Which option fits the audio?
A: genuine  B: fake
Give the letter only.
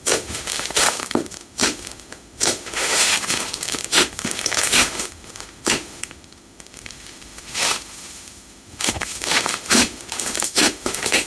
B